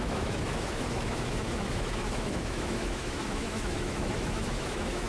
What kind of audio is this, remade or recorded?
remade